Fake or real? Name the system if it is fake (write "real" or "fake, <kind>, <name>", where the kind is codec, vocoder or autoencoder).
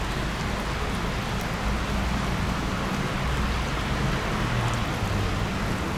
real